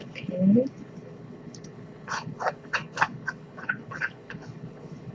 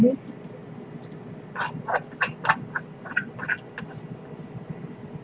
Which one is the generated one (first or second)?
first